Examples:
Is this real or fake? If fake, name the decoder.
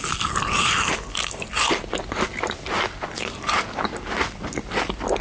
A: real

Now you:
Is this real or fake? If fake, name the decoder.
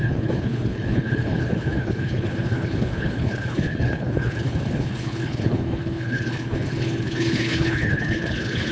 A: fake, codec, HILCodec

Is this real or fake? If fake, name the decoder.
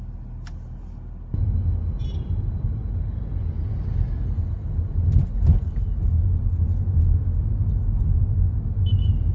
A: real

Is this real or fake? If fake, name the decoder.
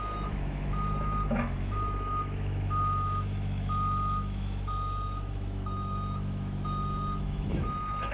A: fake, autoencoder, DAC-VAE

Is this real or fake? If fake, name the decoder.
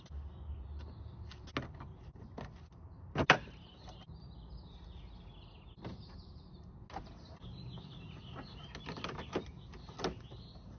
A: real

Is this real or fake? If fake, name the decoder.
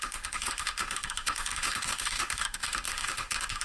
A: fake, autoencoder, DAC-VAE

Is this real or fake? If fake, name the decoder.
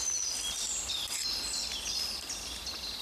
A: real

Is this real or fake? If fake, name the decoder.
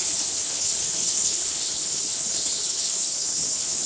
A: fake, codec, HILCodec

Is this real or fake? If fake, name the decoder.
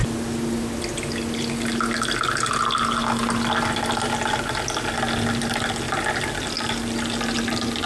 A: real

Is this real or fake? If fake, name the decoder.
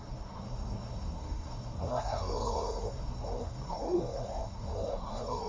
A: fake, codec, SNAC